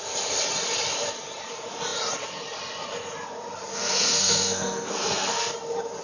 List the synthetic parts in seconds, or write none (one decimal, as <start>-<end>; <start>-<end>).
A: 3.7-5.5